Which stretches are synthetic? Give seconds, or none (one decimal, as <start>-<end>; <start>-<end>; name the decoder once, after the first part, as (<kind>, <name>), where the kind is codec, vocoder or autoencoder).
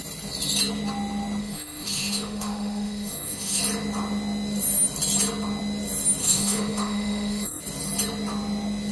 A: 1.4-3.6 (autoencoder, DAC-VAE); 6.2-7.6